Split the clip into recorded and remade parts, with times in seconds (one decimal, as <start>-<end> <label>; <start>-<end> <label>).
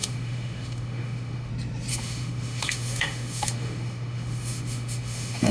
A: 0.0-1.5 remade; 1.5-1.9 recorded; 1.9-5.5 remade